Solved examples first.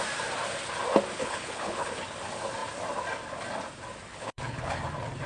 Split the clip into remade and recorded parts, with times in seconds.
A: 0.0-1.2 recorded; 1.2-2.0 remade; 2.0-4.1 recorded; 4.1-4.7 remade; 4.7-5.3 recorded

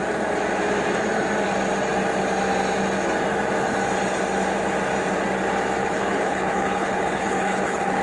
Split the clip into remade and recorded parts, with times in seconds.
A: 0.0-5.8 recorded; 5.8-8.0 remade

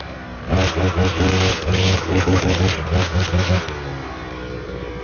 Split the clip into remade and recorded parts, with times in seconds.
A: 0.0-1.5 recorded; 1.5-2.6 remade; 2.6-5.0 recorded

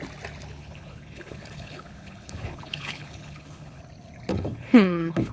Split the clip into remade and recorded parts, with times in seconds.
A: 0.0-0.6 recorded; 0.6-3.8 remade; 3.8-4.3 recorded; 4.3-5.3 remade

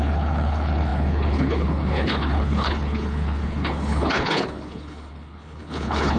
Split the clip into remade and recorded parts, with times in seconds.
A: 0.0-6.2 remade